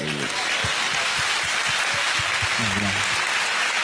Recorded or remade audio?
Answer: recorded